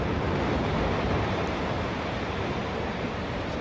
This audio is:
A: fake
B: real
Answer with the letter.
A